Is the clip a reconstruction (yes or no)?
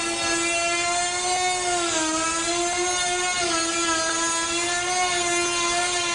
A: no